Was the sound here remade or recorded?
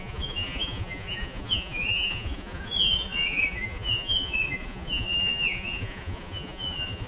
remade